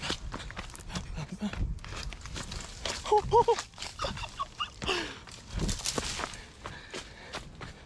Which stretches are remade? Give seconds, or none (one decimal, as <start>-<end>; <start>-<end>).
none